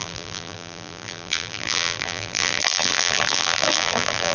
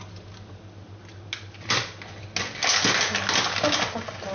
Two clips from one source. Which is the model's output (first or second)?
first